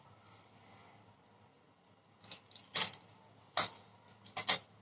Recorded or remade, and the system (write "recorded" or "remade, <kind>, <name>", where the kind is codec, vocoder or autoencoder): recorded